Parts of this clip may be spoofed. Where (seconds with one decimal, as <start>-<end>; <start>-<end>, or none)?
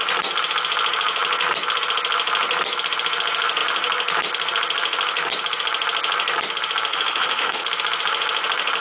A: 6.9-7.6